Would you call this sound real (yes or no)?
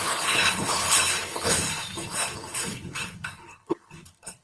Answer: no